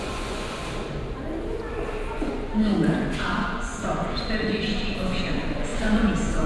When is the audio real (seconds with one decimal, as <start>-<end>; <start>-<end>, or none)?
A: 0.6-2.1